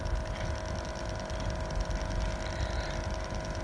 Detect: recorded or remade recorded